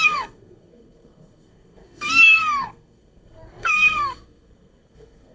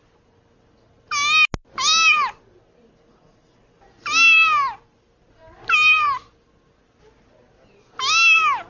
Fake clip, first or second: first